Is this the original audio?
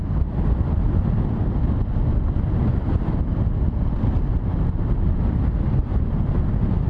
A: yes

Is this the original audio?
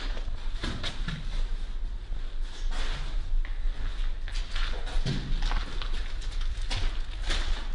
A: yes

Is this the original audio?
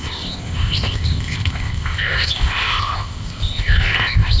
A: no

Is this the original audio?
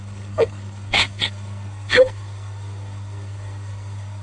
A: no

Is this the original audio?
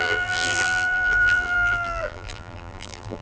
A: no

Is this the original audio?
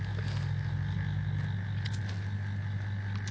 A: yes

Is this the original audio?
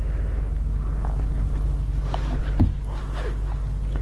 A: yes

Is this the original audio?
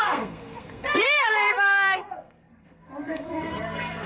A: no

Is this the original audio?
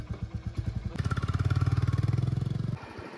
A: yes